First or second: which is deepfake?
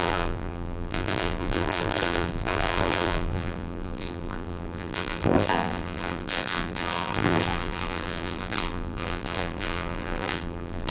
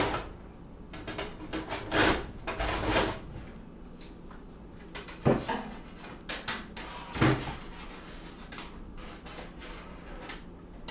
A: first